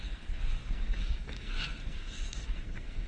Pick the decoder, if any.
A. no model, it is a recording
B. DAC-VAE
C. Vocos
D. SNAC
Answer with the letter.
D